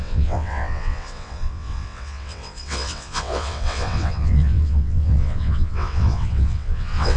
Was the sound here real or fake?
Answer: fake